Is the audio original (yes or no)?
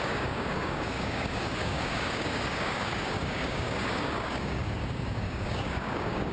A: no